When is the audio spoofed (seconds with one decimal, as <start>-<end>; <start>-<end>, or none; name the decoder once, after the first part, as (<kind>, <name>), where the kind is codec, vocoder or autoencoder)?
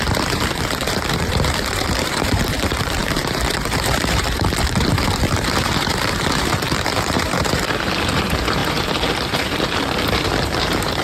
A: 0.0-11.0 (vocoder, BigVGAN v2)